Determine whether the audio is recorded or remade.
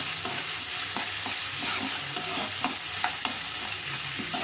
recorded